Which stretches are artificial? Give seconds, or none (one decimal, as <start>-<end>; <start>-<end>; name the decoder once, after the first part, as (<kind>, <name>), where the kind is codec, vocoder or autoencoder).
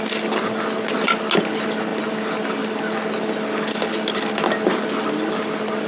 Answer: none